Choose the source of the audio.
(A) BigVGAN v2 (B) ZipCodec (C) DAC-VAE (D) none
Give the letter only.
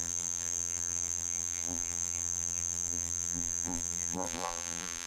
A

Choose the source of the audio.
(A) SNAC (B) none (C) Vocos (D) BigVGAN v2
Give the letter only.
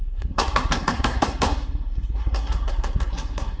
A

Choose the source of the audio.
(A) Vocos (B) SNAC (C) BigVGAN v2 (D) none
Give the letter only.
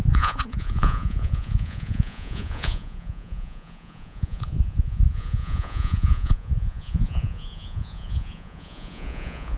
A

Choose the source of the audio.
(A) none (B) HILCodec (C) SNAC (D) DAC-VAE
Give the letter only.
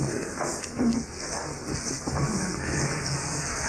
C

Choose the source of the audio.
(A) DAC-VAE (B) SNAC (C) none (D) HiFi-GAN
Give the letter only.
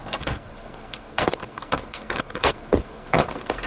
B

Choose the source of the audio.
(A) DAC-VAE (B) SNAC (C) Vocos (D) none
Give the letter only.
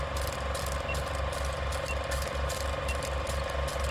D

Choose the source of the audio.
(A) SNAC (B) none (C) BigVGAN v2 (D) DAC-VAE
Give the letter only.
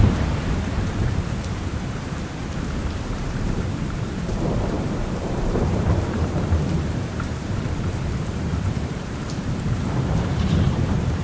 C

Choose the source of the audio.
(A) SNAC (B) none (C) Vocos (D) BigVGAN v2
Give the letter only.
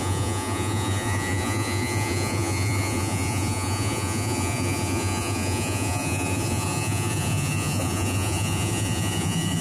C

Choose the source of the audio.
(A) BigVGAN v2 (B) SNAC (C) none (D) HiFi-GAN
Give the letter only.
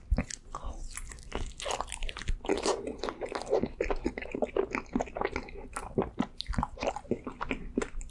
C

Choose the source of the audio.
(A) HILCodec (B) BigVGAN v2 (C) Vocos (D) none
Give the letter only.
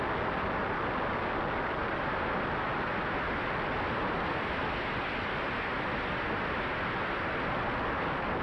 D